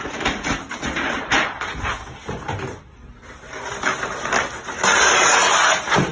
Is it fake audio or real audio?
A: real